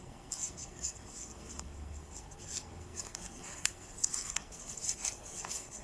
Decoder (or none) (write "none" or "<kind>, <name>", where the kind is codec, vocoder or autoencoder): codec, SNAC